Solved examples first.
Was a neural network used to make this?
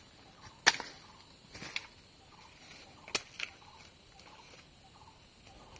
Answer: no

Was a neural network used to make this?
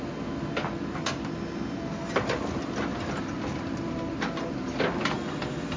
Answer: no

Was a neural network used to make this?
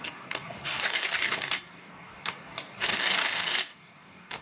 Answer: yes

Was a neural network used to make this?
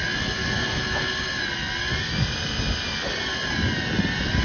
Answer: no